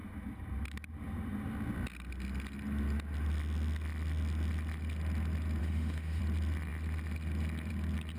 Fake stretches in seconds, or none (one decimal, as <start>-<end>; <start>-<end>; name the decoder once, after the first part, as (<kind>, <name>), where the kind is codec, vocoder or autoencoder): 5.6-6.2 (autoencoder, DAC-VAE)